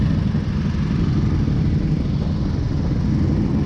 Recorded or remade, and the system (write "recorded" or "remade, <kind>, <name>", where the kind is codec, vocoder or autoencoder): recorded